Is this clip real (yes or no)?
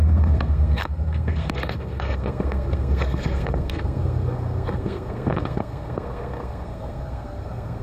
no